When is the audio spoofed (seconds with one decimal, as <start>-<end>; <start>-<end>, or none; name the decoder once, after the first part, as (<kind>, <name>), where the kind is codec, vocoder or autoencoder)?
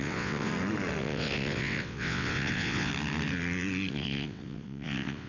0.0-0.5 (vocoder, WaveNeXt); 1.0-2.9; 3.9-5.3